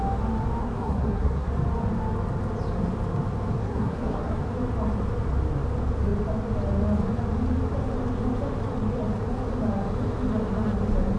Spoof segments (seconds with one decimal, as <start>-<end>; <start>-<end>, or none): 0.6-1.5; 3.6-4.4